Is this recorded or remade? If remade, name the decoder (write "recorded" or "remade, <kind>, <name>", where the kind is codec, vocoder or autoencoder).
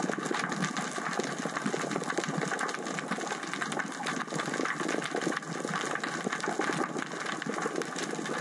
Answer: recorded